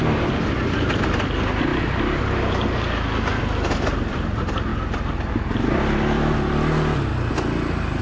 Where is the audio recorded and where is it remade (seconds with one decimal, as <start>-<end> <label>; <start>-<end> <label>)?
0.0-1.7 remade; 1.7-3.4 recorded; 3.4-4.7 remade; 4.7-5.3 recorded; 5.3-7.1 remade; 7.1-8.0 recorded